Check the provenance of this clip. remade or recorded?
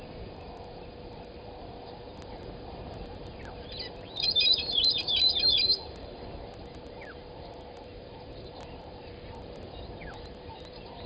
remade